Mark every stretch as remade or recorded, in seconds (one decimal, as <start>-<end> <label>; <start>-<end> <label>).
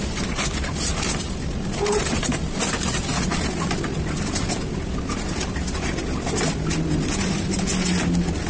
0.0-0.9 recorded; 0.9-4.2 remade; 4.2-8.5 recorded